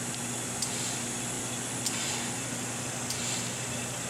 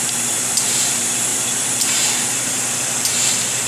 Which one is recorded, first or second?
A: first